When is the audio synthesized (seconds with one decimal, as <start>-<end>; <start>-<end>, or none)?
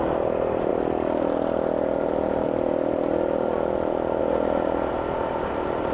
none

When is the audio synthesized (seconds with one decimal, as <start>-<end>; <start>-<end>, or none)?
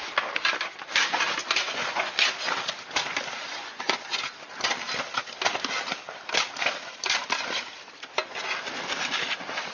1.4-2.1; 3.4-4.2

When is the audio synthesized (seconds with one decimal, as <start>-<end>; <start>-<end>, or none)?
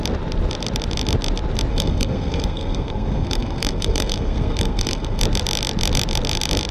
1.7-5.2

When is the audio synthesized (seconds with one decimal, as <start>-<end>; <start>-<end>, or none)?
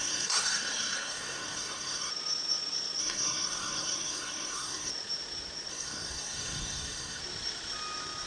0.0-2.1; 3.0-4.9; 5.7-7.2